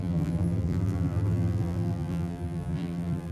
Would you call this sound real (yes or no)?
no